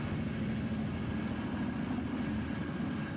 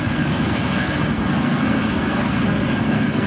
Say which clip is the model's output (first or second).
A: second